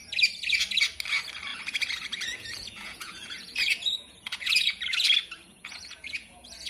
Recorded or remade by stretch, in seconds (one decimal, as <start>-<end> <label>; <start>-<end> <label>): 0.0-1.5 recorded; 1.5-4.8 remade; 4.8-5.5 recorded; 5.5-6.7 remade